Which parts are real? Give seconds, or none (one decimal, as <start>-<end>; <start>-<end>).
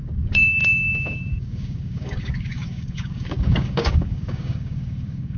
none